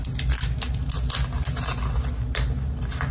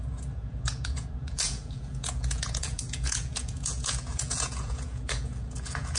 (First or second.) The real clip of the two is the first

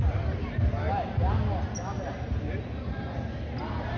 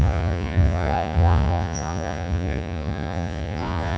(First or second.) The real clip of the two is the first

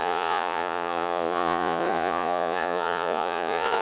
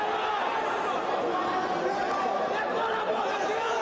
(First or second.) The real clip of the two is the second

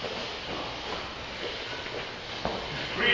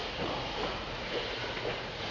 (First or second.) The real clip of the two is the first